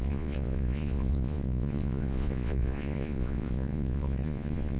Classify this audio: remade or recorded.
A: remade